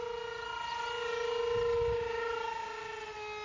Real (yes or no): yes